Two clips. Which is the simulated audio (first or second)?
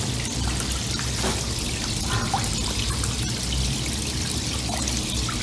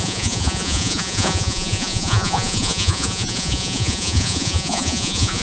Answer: second